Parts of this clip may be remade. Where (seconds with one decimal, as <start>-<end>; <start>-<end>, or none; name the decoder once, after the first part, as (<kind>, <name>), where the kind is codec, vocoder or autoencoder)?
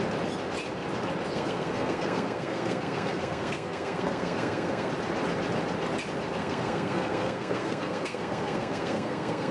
1.3-4.9 (codec, SNAC); 6.4-9.5